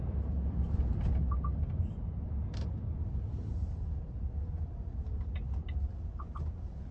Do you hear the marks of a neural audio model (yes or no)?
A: no